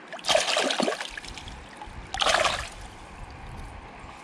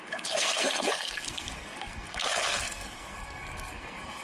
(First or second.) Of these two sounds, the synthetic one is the second